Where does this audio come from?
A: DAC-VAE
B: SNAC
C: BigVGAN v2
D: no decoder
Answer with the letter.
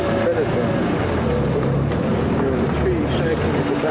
D